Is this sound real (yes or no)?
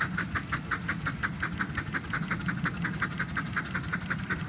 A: yes